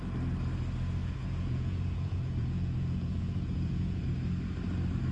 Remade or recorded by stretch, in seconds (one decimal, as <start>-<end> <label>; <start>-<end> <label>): 0.0-1.0 recorded; 1.0-4.1 remade; 4.1-5.1 recorded